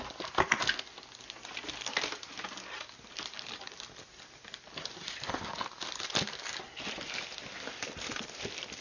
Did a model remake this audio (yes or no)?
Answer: no